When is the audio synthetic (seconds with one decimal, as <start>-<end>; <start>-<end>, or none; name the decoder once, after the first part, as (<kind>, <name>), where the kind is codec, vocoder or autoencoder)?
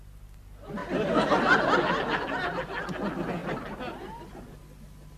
none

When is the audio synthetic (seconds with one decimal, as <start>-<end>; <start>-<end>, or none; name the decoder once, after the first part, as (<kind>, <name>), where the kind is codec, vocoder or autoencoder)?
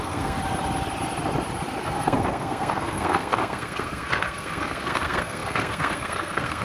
0.0-0.4 (codec, SNAC); 1.8-6.6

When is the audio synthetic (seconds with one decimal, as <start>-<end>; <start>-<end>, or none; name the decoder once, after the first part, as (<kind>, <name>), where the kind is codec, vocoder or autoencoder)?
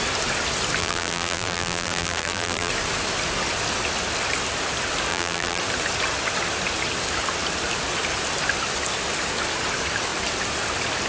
0.8-2.7 (vocoder, BigVGAN v2); 5.1-5.6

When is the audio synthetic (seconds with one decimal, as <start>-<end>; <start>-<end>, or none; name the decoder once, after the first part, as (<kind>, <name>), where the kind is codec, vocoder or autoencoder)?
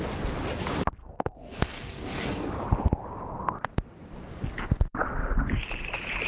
1.0-2.5 (codec, SNAC)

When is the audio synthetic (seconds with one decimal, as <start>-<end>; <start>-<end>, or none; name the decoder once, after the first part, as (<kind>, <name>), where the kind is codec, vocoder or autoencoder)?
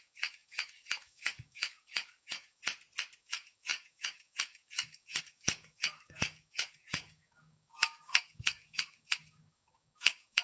0.0-2.6 (codec, DAC); 3.2-10.4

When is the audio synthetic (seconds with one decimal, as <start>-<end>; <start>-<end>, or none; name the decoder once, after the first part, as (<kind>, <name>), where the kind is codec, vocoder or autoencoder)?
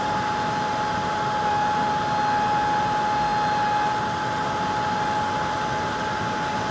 none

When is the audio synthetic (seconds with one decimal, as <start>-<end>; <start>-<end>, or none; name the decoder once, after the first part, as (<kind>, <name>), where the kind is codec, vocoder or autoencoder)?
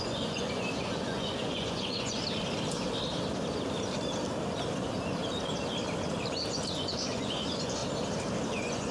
0.0-2.2 (vocoder, Vocos); 6.5-7.8; 8.5-8.9